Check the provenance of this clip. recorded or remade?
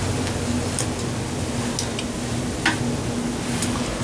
recorded